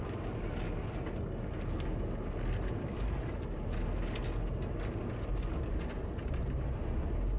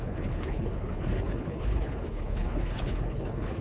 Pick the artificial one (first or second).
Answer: second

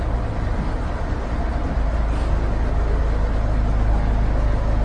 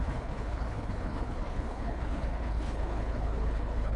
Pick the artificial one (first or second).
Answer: second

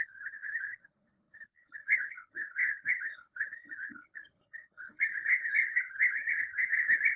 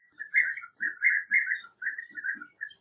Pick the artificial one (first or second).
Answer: first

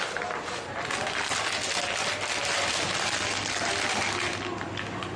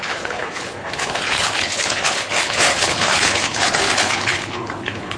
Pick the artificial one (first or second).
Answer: second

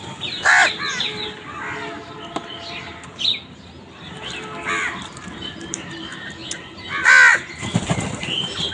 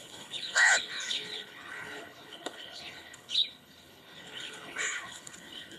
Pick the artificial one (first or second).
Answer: second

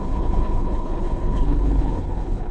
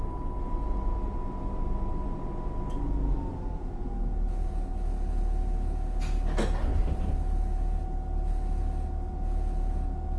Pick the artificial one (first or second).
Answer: first